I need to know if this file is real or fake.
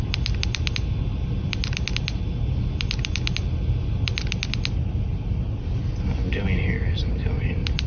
real